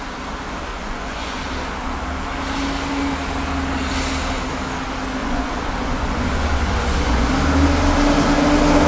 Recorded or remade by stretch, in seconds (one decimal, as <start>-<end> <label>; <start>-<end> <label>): 0.0-0.7 recorded; 0.7-1.5 remade; 1.5-5.2 recorded; 5.2-7.3 remade; 7.3-8.9 recorded